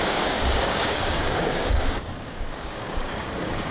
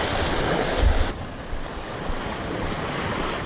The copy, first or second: first